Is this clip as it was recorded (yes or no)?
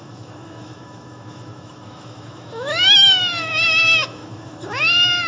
no